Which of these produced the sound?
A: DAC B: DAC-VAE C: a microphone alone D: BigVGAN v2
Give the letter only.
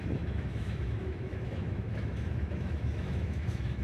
B